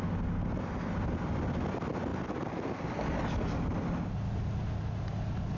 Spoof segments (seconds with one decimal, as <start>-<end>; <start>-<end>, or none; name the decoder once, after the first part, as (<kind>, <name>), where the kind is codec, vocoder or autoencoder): none